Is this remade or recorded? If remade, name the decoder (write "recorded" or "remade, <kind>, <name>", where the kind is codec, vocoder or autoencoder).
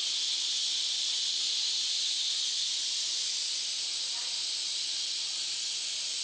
remade, vocoder, BigVGAN v2